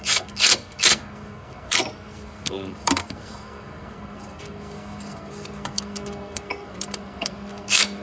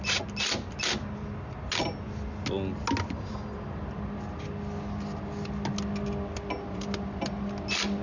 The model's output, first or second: first